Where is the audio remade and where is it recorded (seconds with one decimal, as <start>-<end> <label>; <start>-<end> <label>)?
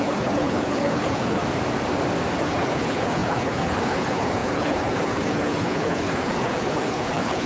0.0-1.4 remade; 1.4-2.4 recorded; 2.4-7.5 remade